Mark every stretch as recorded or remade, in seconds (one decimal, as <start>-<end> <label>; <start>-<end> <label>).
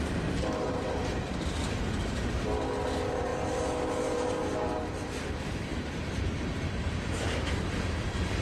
0.0-8.4 remade